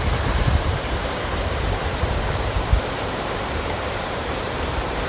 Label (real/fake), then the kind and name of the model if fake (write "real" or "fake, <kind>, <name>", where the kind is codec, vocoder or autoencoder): fake, vocoder, BigVGAN v2